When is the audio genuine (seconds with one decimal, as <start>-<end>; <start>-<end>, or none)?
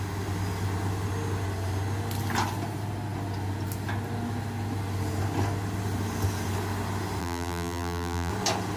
0.0-7.2; 8.3-8.8